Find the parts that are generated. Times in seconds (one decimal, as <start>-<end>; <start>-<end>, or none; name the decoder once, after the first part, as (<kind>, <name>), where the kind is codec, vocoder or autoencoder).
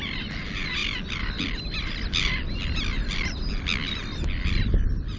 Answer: none